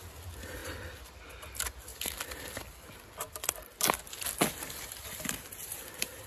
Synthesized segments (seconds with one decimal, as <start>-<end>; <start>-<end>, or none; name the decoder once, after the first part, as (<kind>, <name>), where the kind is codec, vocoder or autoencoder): none